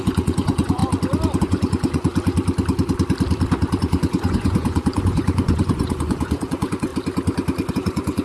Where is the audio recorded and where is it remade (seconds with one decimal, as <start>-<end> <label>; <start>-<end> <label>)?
0.0-0.8 remade; 0.8-1.4 recorded; 1.4-2.1 remade; 2.1-3.8 recorded; 3.8-6.9 remade; 6.9-7.7 recorded; 7.7-8.2 remade